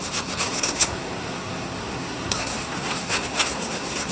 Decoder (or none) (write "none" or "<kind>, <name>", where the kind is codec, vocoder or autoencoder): codec, SNAC